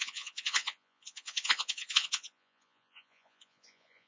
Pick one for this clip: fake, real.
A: fake